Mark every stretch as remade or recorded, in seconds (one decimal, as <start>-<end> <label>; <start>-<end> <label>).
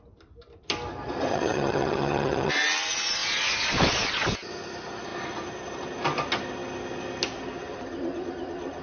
0.0-1.3 recorded; 1.3-2.5 remade; 2.5-8.8 recorded